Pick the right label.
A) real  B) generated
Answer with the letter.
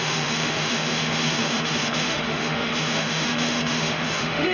B